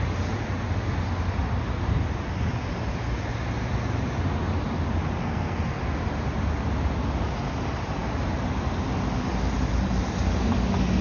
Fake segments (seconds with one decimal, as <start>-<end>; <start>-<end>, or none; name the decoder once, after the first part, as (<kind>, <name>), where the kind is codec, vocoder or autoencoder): 5.2-5.8 (codec, SNAC)